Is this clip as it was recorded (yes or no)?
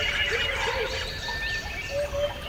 yes